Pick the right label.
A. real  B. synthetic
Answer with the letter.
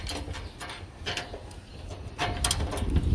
A